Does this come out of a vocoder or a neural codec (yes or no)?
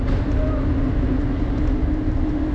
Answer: no